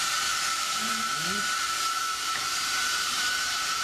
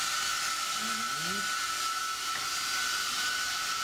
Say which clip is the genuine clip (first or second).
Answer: second